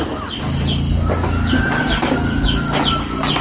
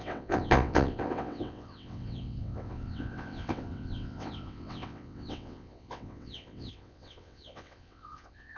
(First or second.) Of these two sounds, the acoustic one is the first